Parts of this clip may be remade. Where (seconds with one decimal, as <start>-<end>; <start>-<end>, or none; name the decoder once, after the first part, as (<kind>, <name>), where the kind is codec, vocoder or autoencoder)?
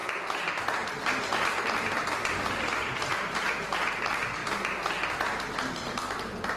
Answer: none